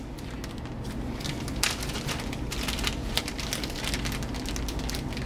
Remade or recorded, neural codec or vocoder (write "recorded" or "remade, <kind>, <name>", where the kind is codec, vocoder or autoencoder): recorded